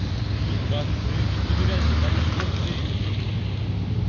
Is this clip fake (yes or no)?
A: no